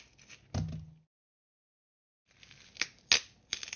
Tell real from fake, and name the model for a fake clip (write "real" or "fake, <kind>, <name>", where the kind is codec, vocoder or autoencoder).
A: real